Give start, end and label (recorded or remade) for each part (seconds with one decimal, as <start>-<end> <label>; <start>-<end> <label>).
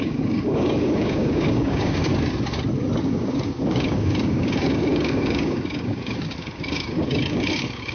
0.0-2.1 remade; 2.1-3.0 recorded; 3.0-7.9 remade